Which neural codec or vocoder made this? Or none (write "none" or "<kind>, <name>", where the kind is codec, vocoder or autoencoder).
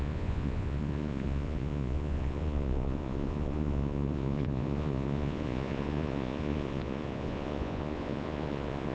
vocoder, Vocos